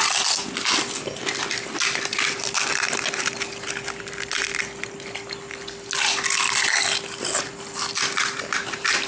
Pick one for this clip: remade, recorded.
recorded